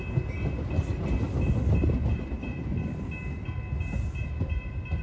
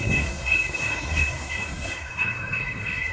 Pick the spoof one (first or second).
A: second